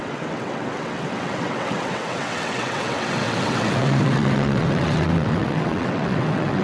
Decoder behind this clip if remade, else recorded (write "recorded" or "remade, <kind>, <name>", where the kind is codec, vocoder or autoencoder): remade, vocoder, WaveNeXt